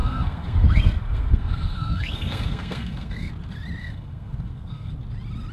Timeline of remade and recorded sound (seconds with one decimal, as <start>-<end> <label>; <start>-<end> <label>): 0.0-3.3 remade; 3.3-3.8 recorded; 3.8-4.9 remade; 4.9-5.5 recorded